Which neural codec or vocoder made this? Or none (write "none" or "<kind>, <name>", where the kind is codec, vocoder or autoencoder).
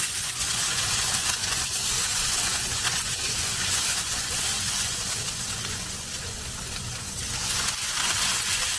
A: vocoder, Vocos